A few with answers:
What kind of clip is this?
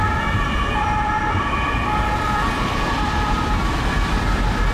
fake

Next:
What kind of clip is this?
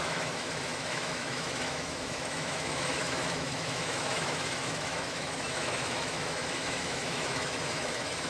fake